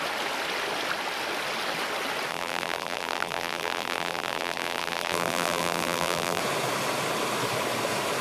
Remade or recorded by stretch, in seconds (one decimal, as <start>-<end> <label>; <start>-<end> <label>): 0.0-2.3 recorded; 2.3-6.4 remade; 6.4-8.2 recorded